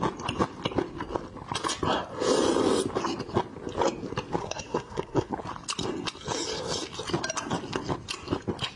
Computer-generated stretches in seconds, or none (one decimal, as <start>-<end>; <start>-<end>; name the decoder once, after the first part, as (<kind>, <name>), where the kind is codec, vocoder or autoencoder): 4.4-5.3 (codec, SNAC)